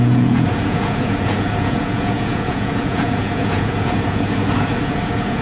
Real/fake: fake